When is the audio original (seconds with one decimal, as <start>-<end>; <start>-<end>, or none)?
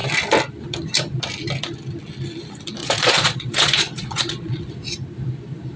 0.0-2.8; 4.6-5.8